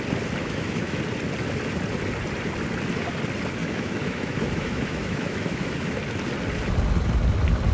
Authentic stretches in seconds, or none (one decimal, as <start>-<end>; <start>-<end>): 0.0-0.4; 1.0-3.6; 6.0-7.7